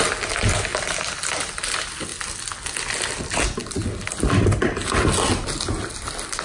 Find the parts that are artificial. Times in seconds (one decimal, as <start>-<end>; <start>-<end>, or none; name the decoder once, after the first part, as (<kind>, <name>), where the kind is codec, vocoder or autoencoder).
none